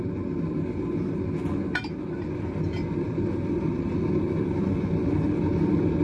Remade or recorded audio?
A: recorded